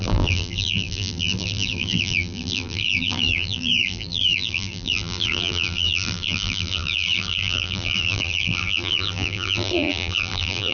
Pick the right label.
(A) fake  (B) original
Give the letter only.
A